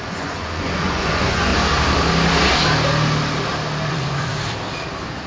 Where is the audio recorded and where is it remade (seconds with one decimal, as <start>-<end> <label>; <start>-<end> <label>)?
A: 0.0-1.5 remade; 1.5-3.9 recorded; 3.9-4.3 remade; 4.3-5.3 recorded